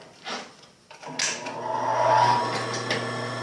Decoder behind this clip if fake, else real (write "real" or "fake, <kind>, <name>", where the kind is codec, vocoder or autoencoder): real